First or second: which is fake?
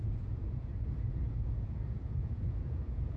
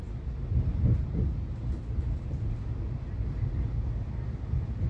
first